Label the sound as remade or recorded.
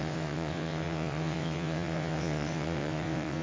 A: remade